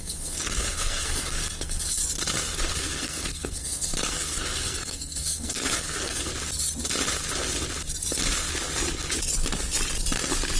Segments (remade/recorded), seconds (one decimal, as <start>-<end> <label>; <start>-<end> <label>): 0.0-2.0 remade; 2.0-2.7 recorded; 2.7-6.3 remade; 6.3-10.6 recorded